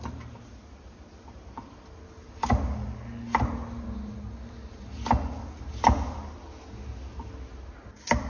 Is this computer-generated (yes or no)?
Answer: no